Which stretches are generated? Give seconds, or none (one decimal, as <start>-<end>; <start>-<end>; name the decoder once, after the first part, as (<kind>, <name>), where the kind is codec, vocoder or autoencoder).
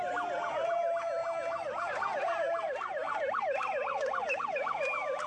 none